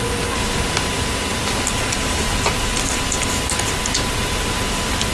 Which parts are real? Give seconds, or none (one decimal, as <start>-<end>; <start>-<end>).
0.0-5.1